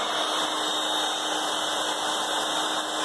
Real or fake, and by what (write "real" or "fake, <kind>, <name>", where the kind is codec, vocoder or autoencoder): real